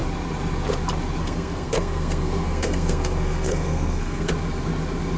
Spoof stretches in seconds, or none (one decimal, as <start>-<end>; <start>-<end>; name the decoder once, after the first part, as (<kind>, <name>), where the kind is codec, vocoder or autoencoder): 1.2-4.3 (codec, SNAC)